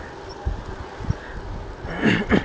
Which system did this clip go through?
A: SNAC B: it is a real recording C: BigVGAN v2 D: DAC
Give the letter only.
B